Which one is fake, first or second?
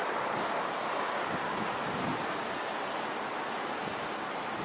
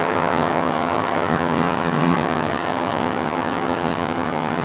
second